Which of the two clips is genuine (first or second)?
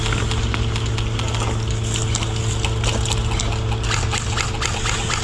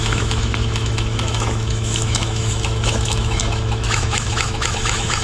first